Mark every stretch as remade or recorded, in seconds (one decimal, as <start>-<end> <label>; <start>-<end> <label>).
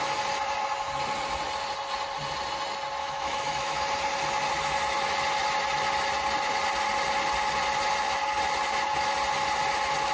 0.0-3.0 recorded; 3.0-3.8 remade; 3.8-10.1 recorded